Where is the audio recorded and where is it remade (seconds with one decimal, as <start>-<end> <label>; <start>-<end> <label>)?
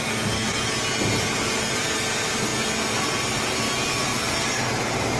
0.0-5.2 recorded